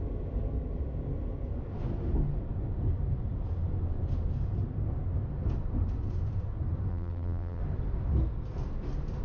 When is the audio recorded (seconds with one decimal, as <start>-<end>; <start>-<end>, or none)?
0.0-6.9; 7.6-9.2